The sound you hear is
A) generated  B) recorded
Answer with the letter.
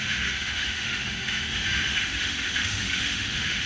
A